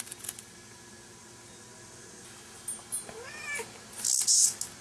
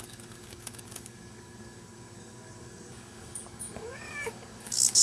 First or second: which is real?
first